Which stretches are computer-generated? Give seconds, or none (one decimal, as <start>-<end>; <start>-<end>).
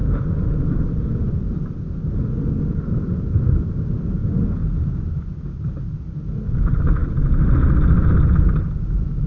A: 0.0-1.8; 7.0-7.5